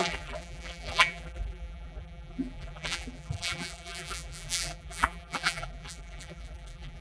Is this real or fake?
fake